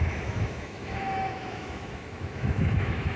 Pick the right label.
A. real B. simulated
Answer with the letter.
B